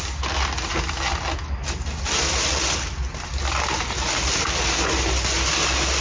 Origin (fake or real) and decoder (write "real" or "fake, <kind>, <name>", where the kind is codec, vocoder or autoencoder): real